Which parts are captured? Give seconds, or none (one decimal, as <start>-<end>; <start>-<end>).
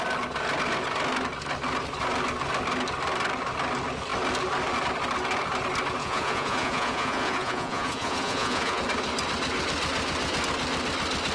0.0-6.0; 8.8-11.3